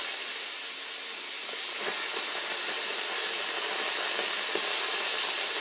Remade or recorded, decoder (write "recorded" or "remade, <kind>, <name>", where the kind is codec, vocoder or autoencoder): recorded